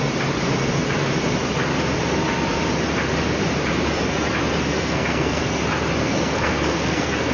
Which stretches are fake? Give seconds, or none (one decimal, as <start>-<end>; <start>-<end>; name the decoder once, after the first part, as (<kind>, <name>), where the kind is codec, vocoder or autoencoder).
4.7-5.4 (codec, SNAC); 6.0-7.3